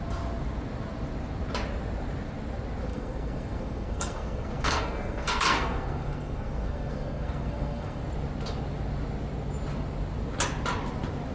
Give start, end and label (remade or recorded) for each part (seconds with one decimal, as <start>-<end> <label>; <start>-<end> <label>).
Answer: 0.0-2.9 recorded; 2.9-8.0 remade; 8.0-11.3 recorded